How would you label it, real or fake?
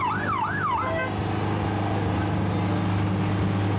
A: real